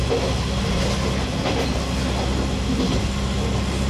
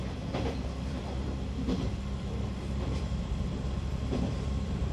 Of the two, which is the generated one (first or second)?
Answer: second